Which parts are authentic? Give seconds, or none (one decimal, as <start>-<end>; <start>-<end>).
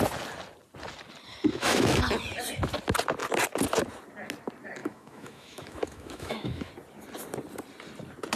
0.0-1.5; 2.0-4.8; 6.7-8.4